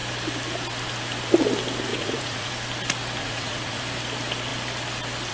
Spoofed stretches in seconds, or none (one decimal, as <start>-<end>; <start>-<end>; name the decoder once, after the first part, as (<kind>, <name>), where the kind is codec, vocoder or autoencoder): 1.9-2.5 (vocoder, Vocos); 3.2-3.8